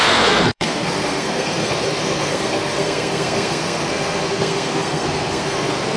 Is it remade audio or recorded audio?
remade